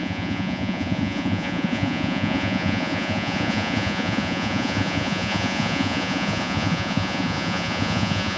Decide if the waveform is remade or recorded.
remade